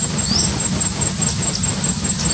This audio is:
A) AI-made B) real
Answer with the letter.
B